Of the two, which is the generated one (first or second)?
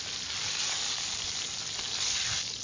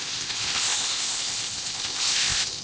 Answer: second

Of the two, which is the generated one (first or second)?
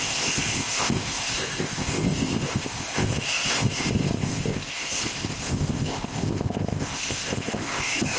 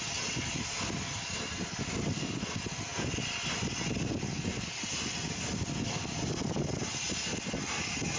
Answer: first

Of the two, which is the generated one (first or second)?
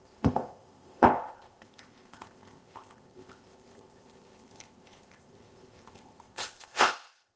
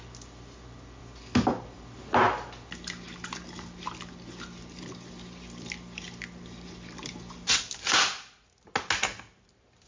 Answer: first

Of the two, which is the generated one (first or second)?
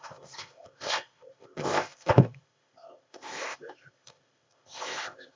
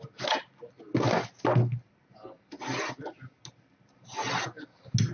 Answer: first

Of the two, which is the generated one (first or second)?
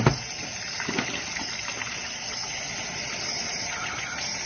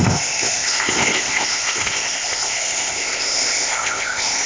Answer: second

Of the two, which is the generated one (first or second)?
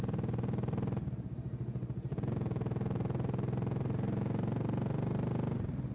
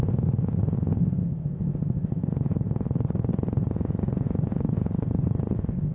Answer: second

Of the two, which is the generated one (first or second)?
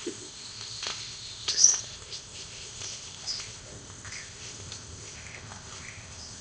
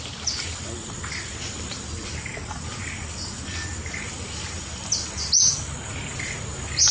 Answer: first